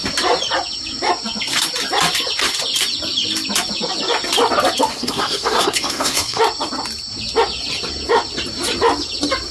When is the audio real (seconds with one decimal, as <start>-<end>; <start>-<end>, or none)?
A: 0.0-4.9; 6.4-9.5